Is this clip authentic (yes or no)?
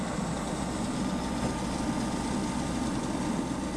yes